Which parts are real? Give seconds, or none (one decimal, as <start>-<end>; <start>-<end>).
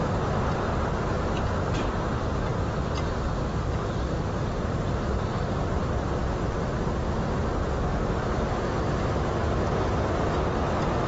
0.0-1.1; 6.2-11.1